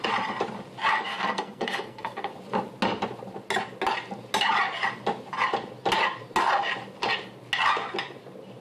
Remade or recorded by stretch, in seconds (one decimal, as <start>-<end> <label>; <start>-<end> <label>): 0.0-0.9 recorded; 0.9-2.3 remade; 2.3-8.6 recorded